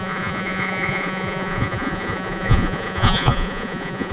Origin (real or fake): fake